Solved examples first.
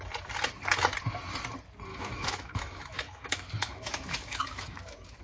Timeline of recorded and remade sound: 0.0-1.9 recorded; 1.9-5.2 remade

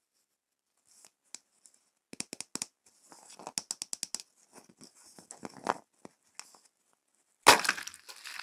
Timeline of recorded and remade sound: 0.0-8.4 recorded

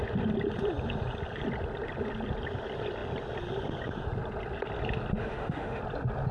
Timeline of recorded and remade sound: 0.0-5.2 recorded; 5.2-5.8 remade; 5.8-6.3 recorded

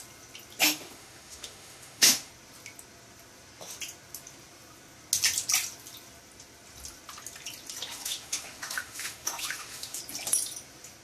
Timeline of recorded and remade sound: 0.0-0.6 recorded; 0.6-2.3 remade; 2.3-7.9 recorded; 7.9-10.0 remade; 10.0-11.0 recorded

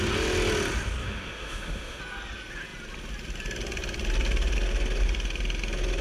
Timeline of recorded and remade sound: 0.0-1.0 recorded; 1.0-2.0 remade; 2.0-6.0 recorded

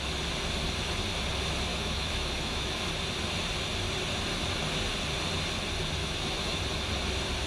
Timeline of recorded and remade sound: 0.0-1.7 recorded; 1.7-2.8 remade; 2.8-6.0 recorded; 6.0-6.6 remade; 6.6-7.5 recorded

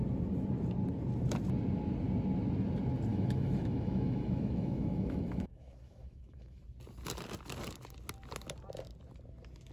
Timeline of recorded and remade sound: 0.0-3.1 recorded; 3.1-6.6 remade; 6.6-9.7 recorded

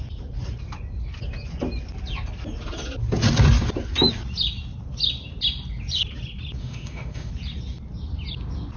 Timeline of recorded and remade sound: 0.0-6.6 recorded; 6.6-7.3 remade; 7.3-8.8 recorded